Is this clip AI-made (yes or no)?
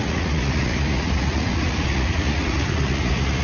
yes